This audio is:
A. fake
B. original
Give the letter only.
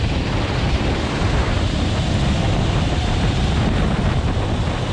B